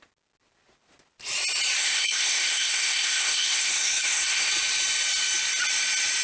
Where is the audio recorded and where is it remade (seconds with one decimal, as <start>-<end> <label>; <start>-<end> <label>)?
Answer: 0.0-1.8 recorded; 1.8-4.5 remade; 4.5-6.2 recorded

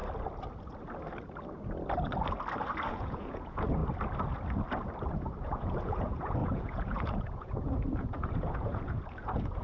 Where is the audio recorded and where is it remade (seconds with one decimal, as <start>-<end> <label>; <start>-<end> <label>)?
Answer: 0.0-2.9 recorded; 2.9-3.8 remade; 3.8-5.4 recorded; 5.4-9.6 remade

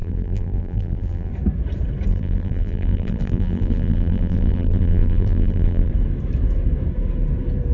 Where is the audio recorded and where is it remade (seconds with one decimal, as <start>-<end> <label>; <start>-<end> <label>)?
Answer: 0.0-1.3 remade; 1.3-2.1 recorded; 2.1-5.9 remade; 5.9-7.7 recorded

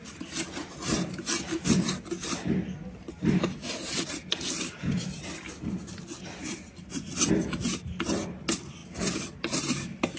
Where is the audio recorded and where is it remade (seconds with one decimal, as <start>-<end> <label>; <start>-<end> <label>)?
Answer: 0.0-10.2 recorded

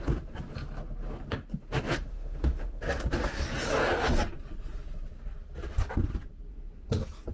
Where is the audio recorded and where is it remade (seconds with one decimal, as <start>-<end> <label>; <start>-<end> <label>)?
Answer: 0.0-2.1 recorded; 2.1-2.8 remade; 2.8-7.3 recorded

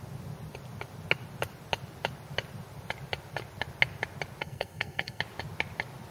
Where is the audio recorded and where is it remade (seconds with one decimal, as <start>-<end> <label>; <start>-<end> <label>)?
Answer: 0.0-4.4 recorded; 4.4-5.2 remade; 5.2-6.1 recorded